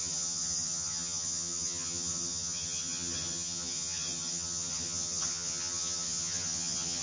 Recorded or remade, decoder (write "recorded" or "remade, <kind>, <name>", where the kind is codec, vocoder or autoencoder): remade, vocoder, HiFi-GAN